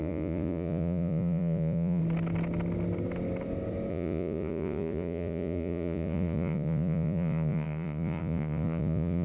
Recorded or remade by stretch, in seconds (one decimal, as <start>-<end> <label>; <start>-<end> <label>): 0.0-2.0 remade; 2.0-3.9 recorded; 3.9-9.2 remade